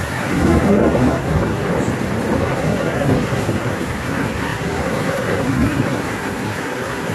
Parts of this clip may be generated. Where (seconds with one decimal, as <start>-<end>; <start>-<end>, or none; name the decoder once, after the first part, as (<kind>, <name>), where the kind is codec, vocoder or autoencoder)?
0.0-1.7 (codec, SNAC); 2.4-7.1